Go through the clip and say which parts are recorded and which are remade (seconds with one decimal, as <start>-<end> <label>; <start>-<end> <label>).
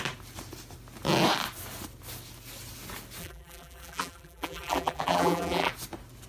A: 0.0-3.2 recorded; 3.2-5.7 remade; 5.7-6.3 recorded